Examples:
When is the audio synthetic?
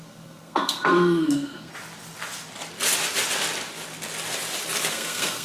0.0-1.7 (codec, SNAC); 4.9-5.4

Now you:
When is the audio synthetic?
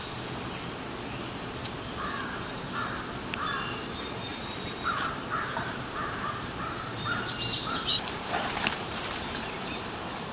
4.3-7.2 (vocoder, BigVGAN v2); 7.9-9.4